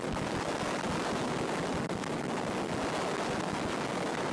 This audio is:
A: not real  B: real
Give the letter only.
B